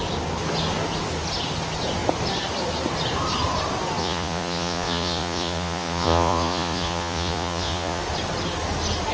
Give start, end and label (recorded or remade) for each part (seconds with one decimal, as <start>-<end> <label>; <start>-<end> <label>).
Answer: 0.0-4.0 recorded; 4.0-8.0 remade; 8.0-9.1 recorded